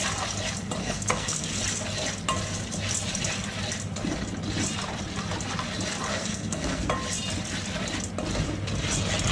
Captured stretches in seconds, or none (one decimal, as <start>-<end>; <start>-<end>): 0.0-0.8; 1.6-6.1; 6.9-9.3